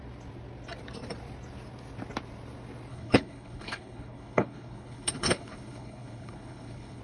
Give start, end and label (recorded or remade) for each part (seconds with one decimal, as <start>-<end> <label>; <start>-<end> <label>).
0.0-2.9 recorded; 2.9-7.0 remade